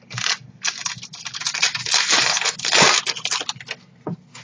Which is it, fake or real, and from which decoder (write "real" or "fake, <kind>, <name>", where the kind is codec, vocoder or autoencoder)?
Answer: real